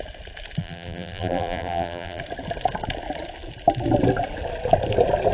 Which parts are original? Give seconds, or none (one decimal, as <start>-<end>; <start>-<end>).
0.0-0.6; 2.2-5.3